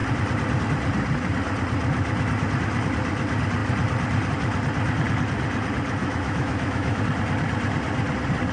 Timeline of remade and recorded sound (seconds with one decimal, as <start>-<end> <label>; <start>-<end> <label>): 0.0-6.0 recorded; 6.0-7.0 remade; 7.0-8.5 recorded

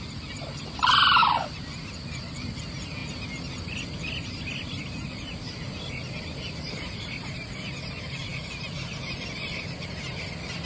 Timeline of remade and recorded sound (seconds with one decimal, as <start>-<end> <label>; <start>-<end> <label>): 0.0-10.7 recorded